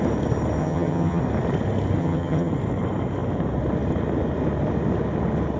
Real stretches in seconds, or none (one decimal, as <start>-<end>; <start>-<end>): 0.0-0.6; 1.2-2.0; 2.5-5.6